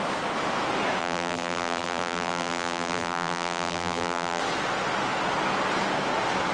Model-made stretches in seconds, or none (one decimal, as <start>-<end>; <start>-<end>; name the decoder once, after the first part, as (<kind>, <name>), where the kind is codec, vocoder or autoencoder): 1.0-4.4 (vocoder, BigVGAN v2)